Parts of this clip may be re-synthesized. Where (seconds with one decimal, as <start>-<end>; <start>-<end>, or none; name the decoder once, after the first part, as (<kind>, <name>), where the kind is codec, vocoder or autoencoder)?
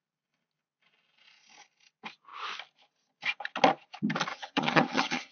4.3-5.3 (vocoder, HiFi-GAN)